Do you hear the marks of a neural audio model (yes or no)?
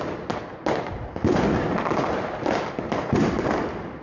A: no